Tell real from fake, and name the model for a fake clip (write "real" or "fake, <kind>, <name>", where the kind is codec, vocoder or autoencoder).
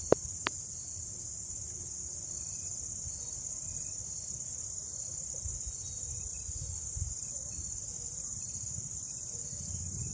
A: real